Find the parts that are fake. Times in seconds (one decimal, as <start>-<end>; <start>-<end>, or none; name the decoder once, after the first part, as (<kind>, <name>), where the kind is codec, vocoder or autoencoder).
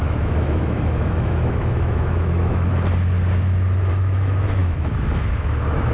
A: 0.0-2.7 (autoencoder, DAC-VAE); 3.9-5.9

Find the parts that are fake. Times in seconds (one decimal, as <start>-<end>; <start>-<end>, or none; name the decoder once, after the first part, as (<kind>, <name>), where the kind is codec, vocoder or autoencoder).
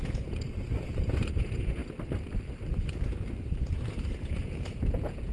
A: 0.0-1.8 (vocoder, Vocos); 3.6-5.3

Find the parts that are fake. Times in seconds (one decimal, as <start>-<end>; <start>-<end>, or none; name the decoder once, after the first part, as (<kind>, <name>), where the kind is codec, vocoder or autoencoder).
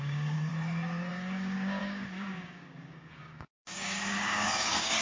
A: 0.0-0.5 (codec, DAC); 1.1-5.0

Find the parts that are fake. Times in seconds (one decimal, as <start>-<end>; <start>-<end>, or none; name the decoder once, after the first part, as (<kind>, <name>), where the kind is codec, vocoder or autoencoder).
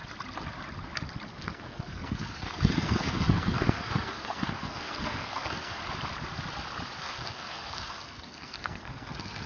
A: 1.3-5.8 (codec, SNAC); 7.0-9.5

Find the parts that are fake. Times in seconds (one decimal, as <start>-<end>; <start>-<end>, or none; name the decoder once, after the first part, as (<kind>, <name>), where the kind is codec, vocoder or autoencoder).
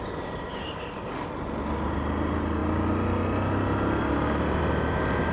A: none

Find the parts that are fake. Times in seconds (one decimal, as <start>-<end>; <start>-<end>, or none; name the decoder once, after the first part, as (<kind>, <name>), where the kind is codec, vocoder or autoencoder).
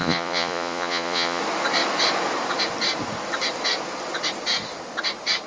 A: 0.0-1.4 (vocoder, Vocos)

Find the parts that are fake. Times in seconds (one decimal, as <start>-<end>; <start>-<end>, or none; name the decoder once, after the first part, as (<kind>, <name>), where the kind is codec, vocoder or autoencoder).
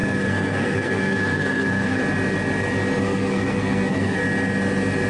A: 0.0-2.0 (codec, SNAC); 3.0-4.2